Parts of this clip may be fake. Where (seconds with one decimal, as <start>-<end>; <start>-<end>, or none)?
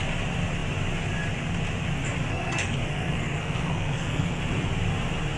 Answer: 2.3-4.4